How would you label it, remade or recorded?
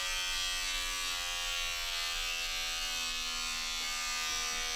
recorded